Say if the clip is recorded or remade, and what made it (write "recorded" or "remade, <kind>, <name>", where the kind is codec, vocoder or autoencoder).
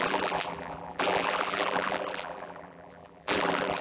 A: remade, vocoder, BigVGAN v2